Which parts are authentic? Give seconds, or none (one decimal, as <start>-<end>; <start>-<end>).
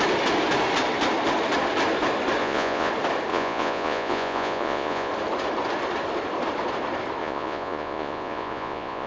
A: 0.0-2.4; 2.9-3.3; 5.1-7.2